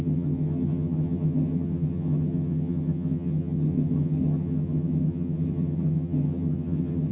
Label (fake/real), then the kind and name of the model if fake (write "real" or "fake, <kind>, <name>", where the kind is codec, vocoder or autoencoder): fake, vocoder, HiFi-GAN